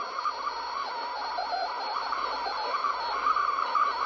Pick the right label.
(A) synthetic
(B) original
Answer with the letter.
B